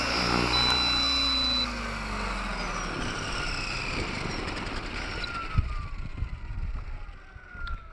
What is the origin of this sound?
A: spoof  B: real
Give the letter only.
B